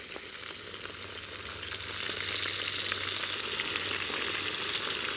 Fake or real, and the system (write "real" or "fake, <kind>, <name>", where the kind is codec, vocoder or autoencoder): real